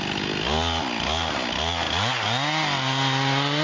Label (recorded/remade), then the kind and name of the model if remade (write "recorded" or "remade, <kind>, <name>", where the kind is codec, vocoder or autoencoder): recorded